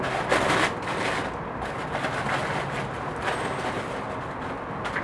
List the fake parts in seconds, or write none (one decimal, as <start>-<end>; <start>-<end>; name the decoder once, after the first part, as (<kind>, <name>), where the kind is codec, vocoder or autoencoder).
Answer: none